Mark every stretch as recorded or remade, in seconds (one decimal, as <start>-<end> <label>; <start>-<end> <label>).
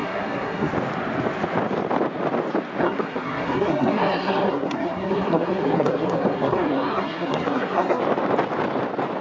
0.0-0.7 remade; 0.7-2.8 recorded; 2.8-8.0 remade; 8.0-9.2 recorded